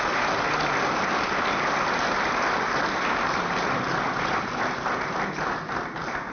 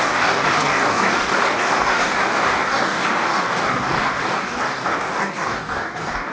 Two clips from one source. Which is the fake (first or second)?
second